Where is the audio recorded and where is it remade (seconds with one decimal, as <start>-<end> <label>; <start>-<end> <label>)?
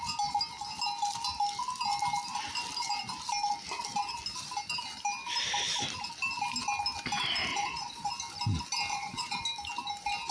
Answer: 0.0-7.5 recorded; 7.5-8.1 remade; 8.1-8.9 recorded; 8.9-9.4 remade; 9.4-10.3 recorded